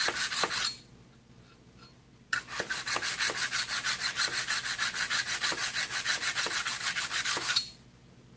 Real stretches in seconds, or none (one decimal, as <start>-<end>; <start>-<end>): 0.0-8.4